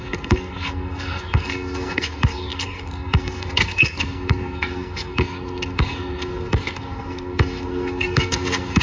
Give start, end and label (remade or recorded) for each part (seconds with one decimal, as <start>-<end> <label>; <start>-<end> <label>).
0.0-8.8 remade